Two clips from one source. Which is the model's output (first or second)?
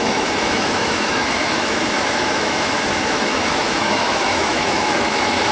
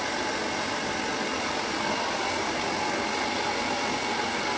first